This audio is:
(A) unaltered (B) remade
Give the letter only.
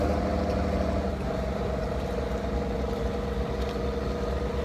A